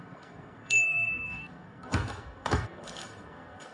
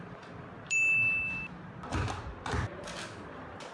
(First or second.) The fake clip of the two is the first